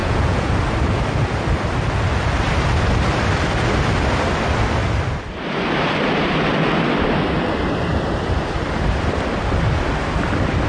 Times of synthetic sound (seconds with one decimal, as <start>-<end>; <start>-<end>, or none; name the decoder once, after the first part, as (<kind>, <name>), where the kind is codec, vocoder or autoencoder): 0.0-0.5 (vocoder, Vocos)